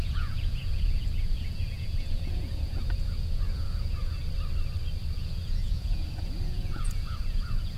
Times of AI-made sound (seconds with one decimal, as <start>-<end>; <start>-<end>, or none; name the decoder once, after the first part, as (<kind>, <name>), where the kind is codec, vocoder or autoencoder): 0.0-4.2 (vocoder, Vocos); 5.1-7.8